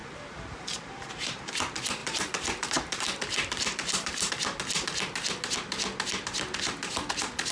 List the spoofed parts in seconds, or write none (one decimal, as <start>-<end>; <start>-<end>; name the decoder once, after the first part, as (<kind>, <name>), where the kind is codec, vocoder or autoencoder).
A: 0.0-1.5 (vocoder, BigVGAN v2); 2.0-4.3